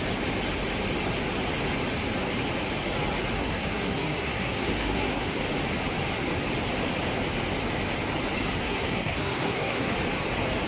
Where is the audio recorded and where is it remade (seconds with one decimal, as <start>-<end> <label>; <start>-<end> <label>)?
0.0-3.4 recorded; 3.4-5.4 remade; 5.4-8.6 recorded; 8.6-9.9 remade; 9.9-10.7 recorded